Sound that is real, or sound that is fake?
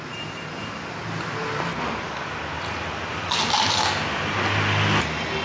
real